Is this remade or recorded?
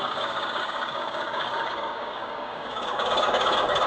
remade